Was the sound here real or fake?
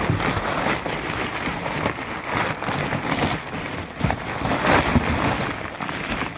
real